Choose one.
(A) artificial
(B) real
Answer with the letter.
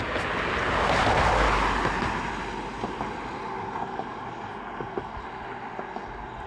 B